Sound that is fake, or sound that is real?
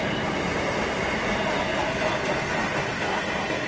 real